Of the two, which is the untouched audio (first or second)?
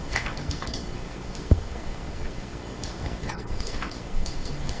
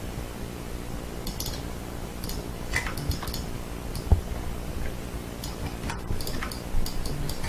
second